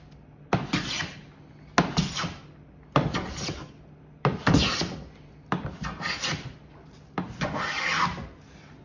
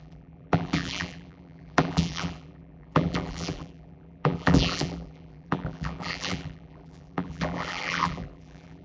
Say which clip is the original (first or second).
first